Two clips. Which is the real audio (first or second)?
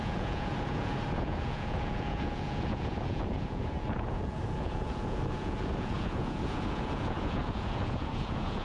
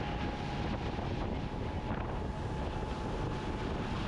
second